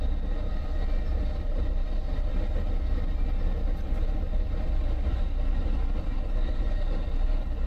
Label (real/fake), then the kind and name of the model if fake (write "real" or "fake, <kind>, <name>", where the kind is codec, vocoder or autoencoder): real